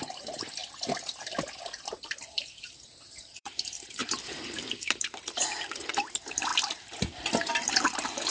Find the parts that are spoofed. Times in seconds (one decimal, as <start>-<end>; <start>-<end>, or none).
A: 0.0-0.6; 1.8-6.5; 7.5-8.3